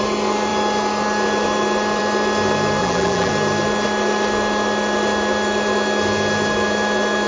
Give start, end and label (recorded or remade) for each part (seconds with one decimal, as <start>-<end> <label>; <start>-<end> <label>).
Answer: 0.0-2.8 recorded; 2.8-3.3 remade; 3.3-7.3 recorded